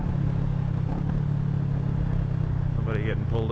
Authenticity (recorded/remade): recorded